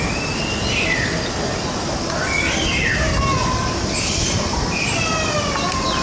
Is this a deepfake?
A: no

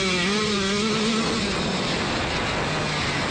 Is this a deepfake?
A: no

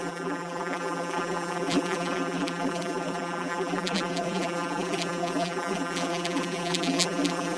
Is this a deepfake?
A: yes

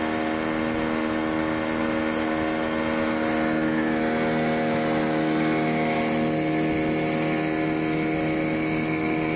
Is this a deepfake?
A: no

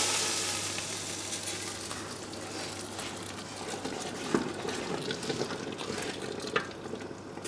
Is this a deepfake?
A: no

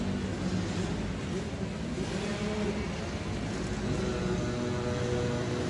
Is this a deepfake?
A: no